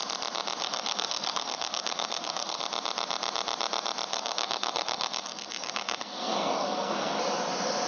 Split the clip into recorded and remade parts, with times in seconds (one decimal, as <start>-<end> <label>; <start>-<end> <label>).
0.0-0.6 recorded; 0.6-2.6 remade; 2.6-4.1 recorded; 4.1-7.2 remade; 7.2-7.9 recorded